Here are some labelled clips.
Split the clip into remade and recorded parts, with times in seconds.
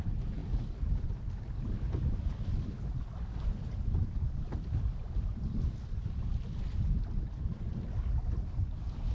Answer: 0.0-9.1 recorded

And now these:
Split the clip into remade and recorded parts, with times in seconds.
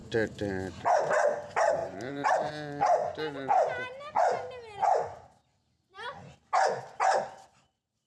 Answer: 0.0-1.8 recorded; 1.8-2.5 remade; 2.5-8.1 recorded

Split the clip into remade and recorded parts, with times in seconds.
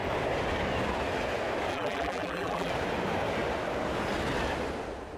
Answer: 0.0-1.7 recorded; 1.7-2.7 remade; 2.7-5.2 recorded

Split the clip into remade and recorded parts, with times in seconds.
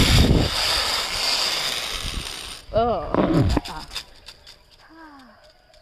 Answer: 0.0-5.8 recorded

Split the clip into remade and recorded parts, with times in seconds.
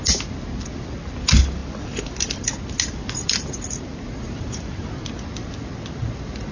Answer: 0.0-1.6 recorded; 1.6-2.4 remade; 2.4-6.5 recorded